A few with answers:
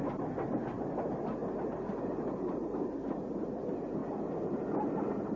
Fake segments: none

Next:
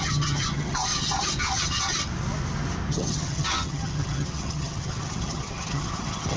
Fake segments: 0.0-0.9 (vocoder, HiFi-GAN); 1.4-1.9; 2.9-6.4

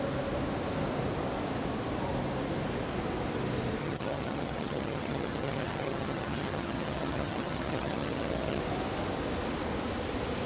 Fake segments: 3.8-8.6 (vocoder, HiFi-GAN)

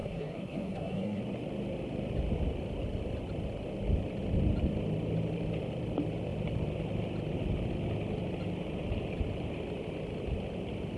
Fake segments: 0.0-1.2 (codec, SNAC)

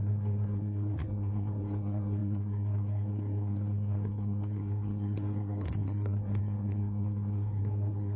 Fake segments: 0.0-8.2 (codec, SNAC)

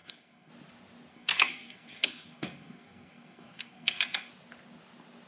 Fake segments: 0.0-0.5 (codec, SNAC); 1.1-4.3

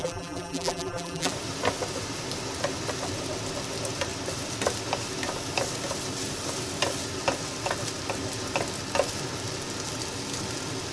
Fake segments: 0.0-1.3 (vocoder, BigVGAN v2)